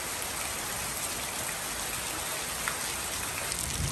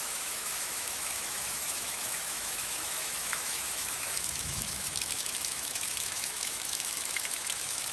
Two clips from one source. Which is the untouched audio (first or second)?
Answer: first